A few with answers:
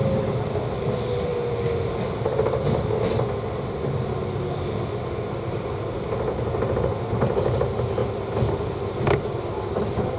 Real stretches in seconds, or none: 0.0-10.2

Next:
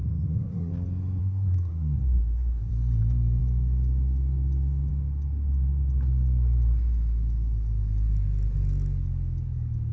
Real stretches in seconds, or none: 0.7-1.2; 2.7-9.9